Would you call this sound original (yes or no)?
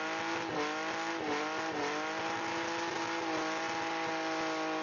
yes